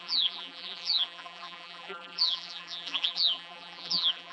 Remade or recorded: remade